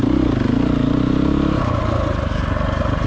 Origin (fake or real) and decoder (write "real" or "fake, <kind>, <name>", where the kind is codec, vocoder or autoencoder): real